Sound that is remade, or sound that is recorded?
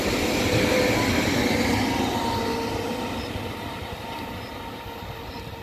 remade